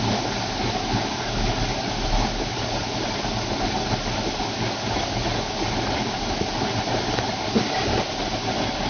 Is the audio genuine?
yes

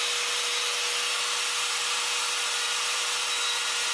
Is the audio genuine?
yes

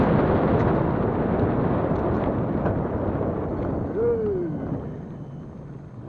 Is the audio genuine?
yes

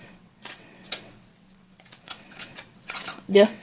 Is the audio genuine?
no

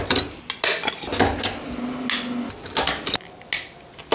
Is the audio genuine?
yes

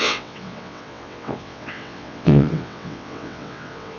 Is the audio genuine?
no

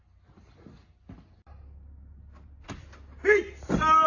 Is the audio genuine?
yes